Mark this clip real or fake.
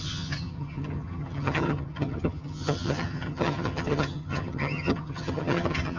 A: fake